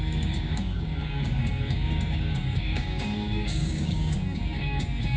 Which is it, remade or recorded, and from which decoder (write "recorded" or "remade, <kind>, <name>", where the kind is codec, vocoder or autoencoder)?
remade, codec, DAC